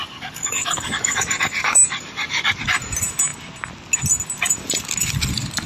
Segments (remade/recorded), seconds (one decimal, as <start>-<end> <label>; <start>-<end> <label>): 0.0-2.6 remade; 2.6-5.7 recorded